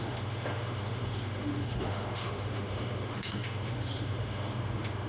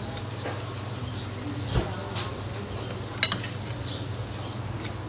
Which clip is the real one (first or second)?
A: second